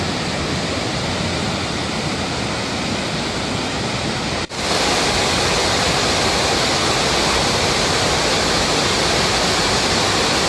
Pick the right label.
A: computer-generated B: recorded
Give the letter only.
B